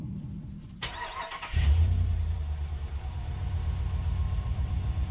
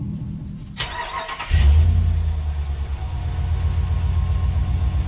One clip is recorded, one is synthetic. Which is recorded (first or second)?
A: second